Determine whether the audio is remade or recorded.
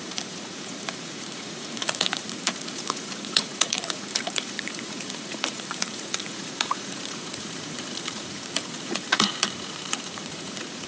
remade